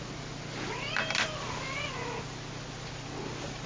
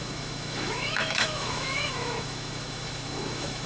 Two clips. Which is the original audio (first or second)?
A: first